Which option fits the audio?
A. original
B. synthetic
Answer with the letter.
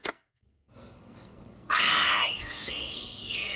B